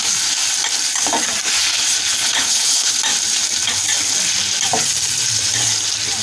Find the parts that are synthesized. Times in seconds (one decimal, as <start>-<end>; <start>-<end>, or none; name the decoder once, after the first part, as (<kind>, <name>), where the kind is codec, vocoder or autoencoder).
2.2-2.9 (codec, HILCodec)